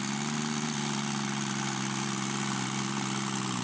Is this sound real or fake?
real